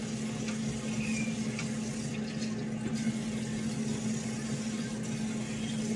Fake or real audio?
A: real